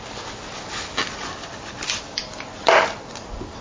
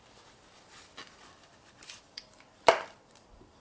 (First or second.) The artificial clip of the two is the second